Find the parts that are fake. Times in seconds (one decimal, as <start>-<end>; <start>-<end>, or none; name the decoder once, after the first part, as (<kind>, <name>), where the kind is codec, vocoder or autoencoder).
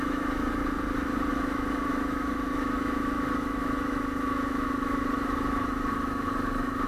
0.0-0.6 (autoencoder, DAC-VAE); 1.3-6.9